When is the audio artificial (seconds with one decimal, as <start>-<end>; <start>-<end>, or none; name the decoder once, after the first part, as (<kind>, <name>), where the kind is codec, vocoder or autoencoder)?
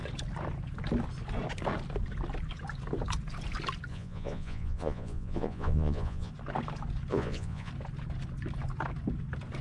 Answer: 3.9-6.3 (vocoder, Vocos); 7.1-7.7